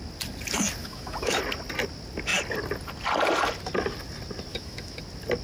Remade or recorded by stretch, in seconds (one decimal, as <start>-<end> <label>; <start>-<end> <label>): 0.0-0.8 recorded; 0.8-1.4 remade; 1.4-4.5 recorded; 4.5-5.0 remade; 5.0-5.4 recorded